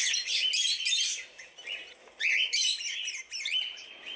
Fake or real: real